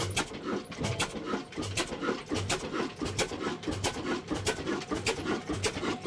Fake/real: real